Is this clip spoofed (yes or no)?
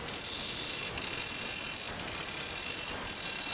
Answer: no